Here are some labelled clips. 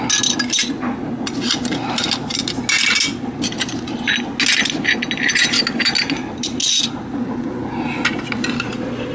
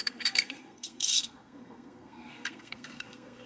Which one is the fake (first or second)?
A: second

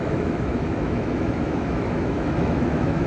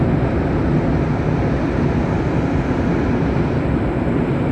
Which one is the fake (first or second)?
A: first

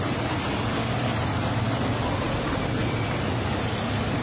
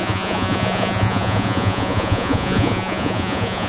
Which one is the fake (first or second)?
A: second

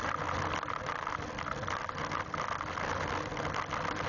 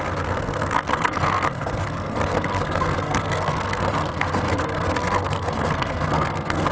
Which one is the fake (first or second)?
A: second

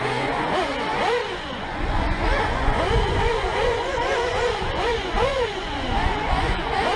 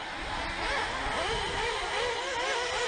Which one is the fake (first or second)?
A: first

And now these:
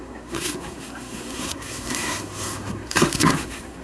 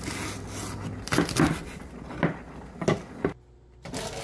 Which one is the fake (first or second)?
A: first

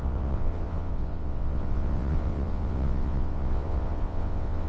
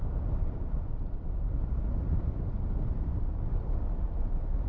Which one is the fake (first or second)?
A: first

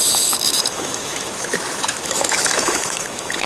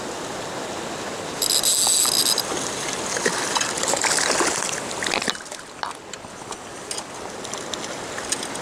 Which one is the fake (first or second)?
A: first